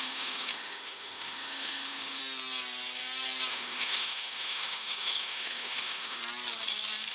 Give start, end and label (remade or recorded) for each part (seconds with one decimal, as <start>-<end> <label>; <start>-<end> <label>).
0.0-2.2 remade; 2.2-3.5 recorded; 3.5-6.2 remade; 6.2-7.1 recorded